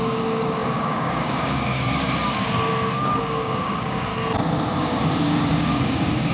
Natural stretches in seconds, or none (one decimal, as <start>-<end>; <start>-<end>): 4.1-4.8